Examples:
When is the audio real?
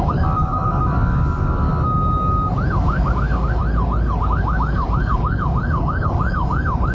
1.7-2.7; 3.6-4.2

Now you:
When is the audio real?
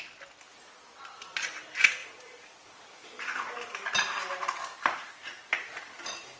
0.0-6.4